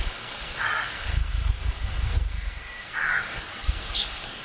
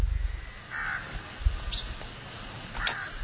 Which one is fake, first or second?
first